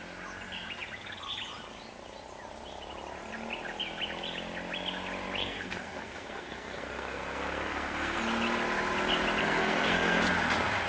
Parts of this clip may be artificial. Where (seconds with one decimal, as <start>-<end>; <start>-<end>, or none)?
5.4-8.2; 9.4-10.2